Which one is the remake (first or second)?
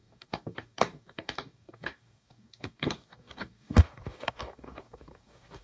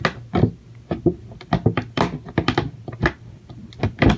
first